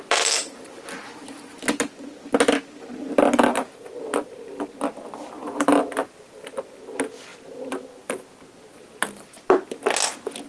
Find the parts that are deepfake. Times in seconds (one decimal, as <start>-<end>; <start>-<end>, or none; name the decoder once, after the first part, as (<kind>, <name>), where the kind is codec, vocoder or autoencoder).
none